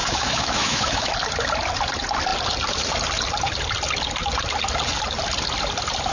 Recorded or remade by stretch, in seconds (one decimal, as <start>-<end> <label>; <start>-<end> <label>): 0.0-1.1 remade; 1.1-6.1 recorded